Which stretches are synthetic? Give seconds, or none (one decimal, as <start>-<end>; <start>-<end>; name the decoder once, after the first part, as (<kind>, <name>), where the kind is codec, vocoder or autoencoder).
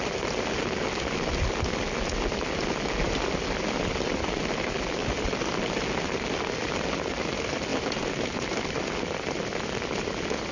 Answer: 5.0-5.6 (vocoder, BigVGAN v2); 7.7-8.7